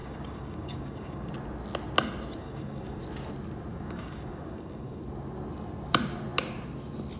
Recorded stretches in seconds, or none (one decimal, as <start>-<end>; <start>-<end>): 1.3-2.4; 3.0-3.7; 5.0-7.2